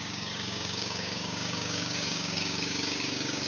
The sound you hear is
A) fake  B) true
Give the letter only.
A